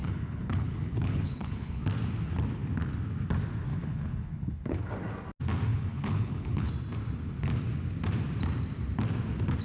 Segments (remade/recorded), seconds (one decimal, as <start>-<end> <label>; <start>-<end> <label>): 0.0-1.8 remade; 1.8-3.7 recorded; 3.7-4.9 remade; 4.9-5.7 recorded; 5.7-6.7 remade; 6.7-9.6 recorded